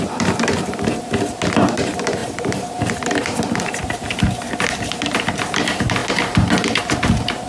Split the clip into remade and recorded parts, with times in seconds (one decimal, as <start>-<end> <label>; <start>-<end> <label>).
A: 0.0-7.5 remade